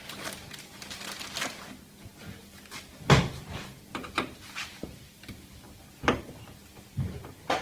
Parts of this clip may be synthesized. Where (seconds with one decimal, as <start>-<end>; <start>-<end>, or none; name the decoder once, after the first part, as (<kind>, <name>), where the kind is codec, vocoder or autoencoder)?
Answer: none